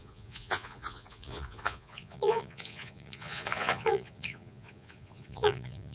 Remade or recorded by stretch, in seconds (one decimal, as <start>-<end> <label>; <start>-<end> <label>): 0.0-5.9 remade